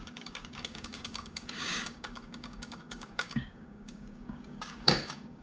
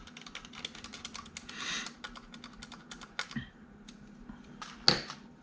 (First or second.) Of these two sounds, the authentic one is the second